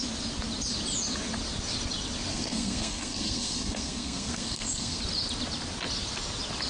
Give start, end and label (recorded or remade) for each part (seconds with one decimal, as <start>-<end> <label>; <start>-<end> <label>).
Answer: 0.0-2.3 recorded; 2.3-5.0 remade; 5.0-6.7 recorded